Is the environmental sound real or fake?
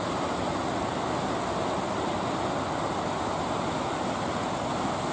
real